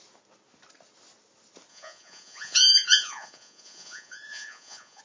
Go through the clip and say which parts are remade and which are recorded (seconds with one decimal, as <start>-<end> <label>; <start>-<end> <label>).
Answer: 0.0-1.7 recorded; 1.7-5.0 remade